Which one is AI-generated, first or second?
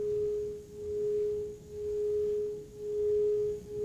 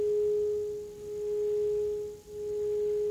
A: first